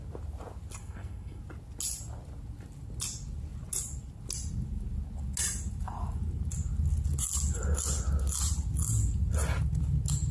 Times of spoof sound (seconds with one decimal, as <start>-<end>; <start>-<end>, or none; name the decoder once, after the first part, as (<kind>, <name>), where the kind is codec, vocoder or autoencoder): 0.8-1.4 (codec, SNAC)